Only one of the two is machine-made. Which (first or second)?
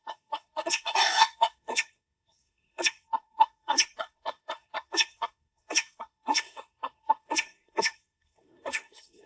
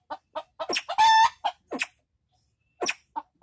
first